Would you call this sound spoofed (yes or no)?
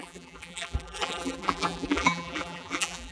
yes